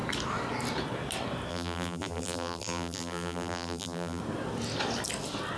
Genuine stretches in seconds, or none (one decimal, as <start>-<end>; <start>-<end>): 0.0-1.5; 4.2-5.6